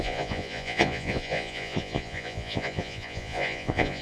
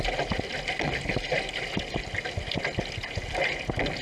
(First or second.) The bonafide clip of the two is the second